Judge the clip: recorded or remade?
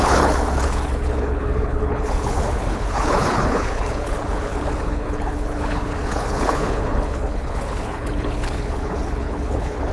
remade